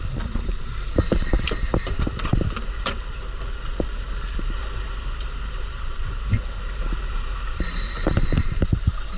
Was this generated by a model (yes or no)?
yes